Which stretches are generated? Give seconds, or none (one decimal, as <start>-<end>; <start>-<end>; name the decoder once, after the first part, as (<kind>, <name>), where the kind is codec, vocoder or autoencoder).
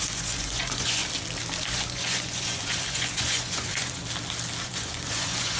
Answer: 0.0-1.0 (vocoder, Vocos); 1.7-4.0; 4.6-5.6